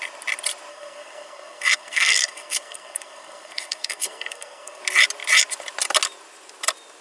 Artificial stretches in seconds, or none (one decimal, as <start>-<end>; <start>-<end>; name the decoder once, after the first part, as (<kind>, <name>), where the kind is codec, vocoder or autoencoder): 0.7-4.8 (codec, SNAC)